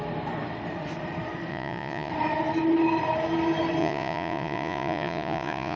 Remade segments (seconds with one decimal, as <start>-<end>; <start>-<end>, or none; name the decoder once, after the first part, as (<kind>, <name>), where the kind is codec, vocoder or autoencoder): 1.5-2.1 (vocoder, Vocos); 3.8-5.8